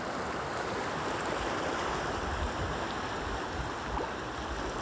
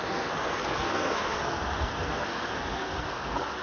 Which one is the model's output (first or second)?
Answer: second